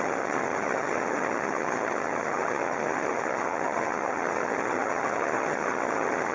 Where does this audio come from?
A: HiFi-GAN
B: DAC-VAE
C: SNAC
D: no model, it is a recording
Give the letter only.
A